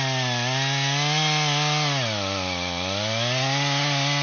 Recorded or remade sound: recorded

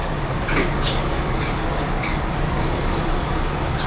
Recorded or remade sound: remade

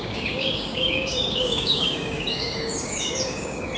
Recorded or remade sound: remade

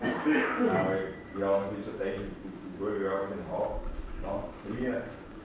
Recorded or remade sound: remade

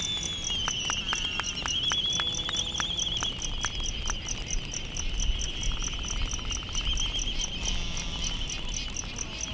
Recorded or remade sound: recorded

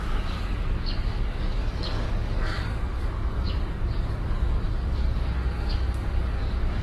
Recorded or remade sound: remade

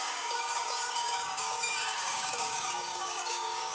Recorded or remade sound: remade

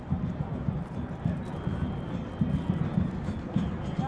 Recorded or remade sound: recorded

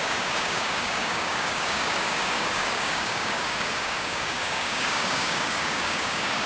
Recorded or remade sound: remade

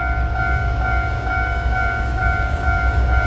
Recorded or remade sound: remade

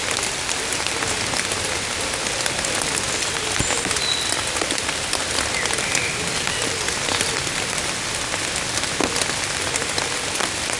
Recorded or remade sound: recorded